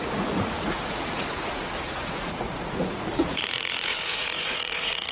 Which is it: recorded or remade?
remade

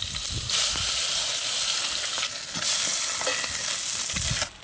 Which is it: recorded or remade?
recorded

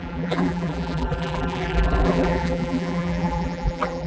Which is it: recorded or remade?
remade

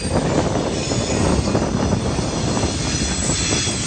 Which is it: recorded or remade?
recorded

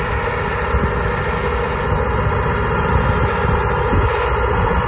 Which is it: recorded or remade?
recorded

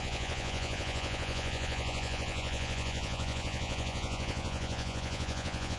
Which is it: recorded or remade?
remade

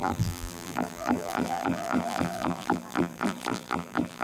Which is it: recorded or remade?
remade